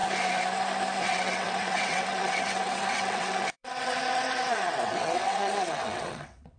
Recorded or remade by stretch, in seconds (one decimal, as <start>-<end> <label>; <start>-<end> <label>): 0.0-1.0 recorded; 1.0-6.6 remade

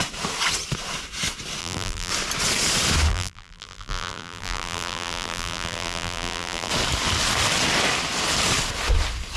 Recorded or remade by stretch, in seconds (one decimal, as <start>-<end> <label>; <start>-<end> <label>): 0.0-1.6 recorded; 1.6-2.1 remade; 2.1-3.1 recorded; 3.1-6.7 remade; 6.7-9.4 recorded

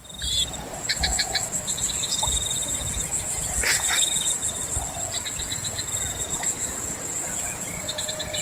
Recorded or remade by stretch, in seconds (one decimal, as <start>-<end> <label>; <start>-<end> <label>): 0.0-0.7 recorded; 0.7-4.6 remade; 4.6-5.4 recorded; 5.4-8.4 remade